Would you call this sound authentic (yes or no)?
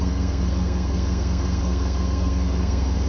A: no